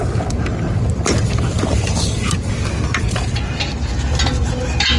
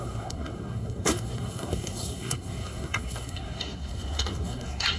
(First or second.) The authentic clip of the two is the first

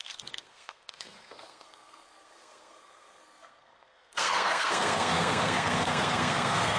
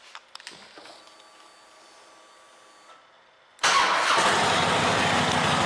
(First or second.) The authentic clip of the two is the second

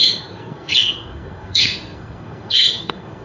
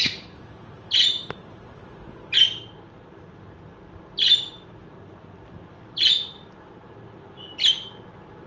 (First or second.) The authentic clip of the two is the second